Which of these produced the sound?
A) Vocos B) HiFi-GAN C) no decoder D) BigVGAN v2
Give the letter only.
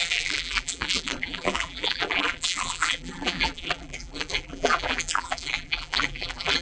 D